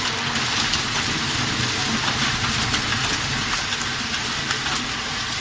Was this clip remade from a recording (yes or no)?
no